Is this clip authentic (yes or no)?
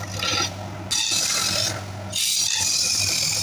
yes